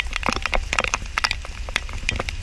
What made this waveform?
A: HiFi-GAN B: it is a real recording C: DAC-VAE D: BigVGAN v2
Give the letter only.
B